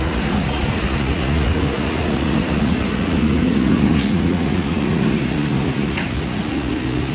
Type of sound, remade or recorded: remade